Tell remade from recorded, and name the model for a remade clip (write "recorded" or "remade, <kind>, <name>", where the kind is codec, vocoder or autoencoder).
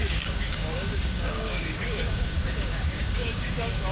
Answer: remade, codec, DAC